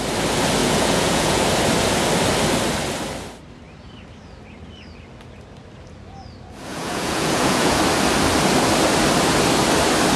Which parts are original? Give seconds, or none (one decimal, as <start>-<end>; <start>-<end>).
0.0-0.6; 1.4-6.7; 7.8-10.2